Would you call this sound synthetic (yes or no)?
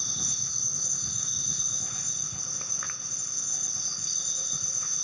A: yes